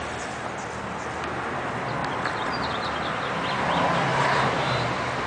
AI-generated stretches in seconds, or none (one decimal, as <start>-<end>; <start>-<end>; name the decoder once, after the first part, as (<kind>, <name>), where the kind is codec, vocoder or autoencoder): 2.0-2.7 (vocoder, BigVGAN v2)